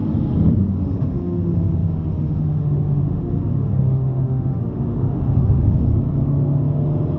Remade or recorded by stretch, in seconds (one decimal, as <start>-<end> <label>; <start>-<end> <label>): 0.0-0.7 recorded; 0.7-5.9 remade; 5.9-7.2 recorded